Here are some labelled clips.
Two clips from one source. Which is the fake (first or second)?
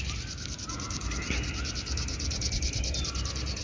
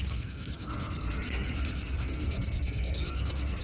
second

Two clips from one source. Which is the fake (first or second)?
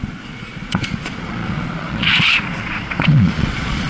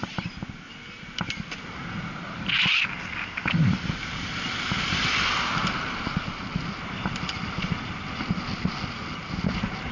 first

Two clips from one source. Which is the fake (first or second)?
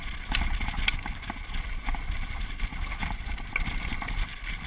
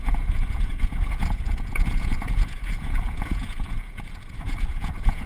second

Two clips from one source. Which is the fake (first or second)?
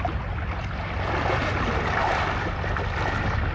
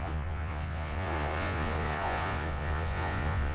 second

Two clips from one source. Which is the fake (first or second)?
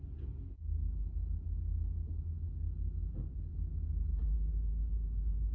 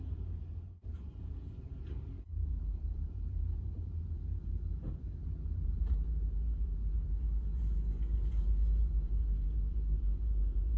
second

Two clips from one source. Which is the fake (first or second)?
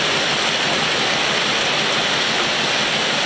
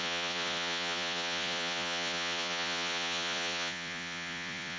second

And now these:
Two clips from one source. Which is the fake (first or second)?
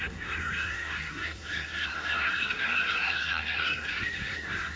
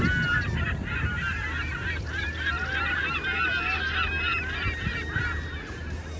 first